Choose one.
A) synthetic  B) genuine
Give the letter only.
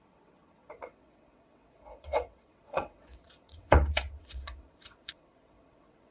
A